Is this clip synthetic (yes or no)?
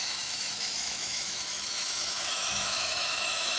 yes